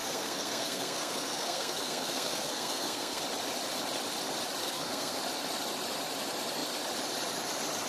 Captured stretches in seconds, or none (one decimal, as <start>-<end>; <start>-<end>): 3.2-4.6; 5.2-7.9